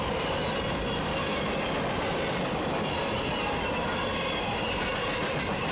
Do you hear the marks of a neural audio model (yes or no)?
no